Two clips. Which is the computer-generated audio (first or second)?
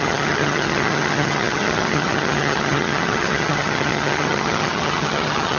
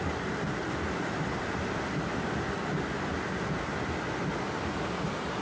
first